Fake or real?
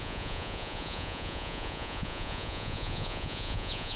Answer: fake